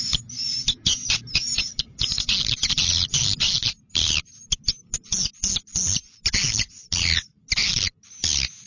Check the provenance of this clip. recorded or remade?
recorded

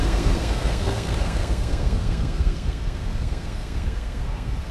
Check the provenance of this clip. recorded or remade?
remade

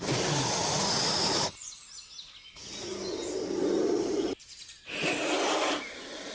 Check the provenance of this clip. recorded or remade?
recorded